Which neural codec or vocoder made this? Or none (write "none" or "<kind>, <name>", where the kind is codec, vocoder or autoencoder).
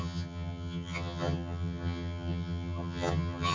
vocoder, HiFi-GAN